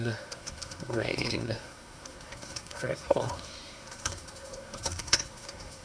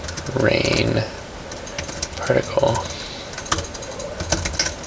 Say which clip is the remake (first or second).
first